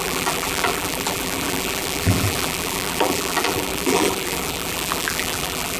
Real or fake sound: fake